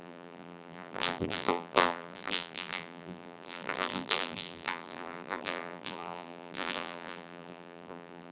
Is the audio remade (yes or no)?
yes